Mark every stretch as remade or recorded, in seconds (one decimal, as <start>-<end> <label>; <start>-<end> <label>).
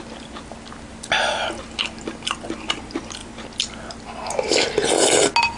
0.0-5.6 recorded